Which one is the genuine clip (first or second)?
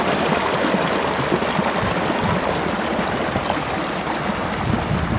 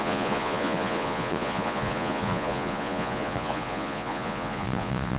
first